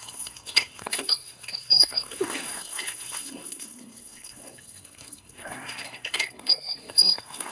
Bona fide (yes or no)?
no